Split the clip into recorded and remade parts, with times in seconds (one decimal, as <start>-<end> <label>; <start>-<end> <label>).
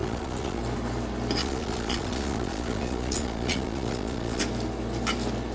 0.0-0.6 remade; 0.6-1.4 recorded; 1.4-4.4 remade; 4.4-5.5 recorded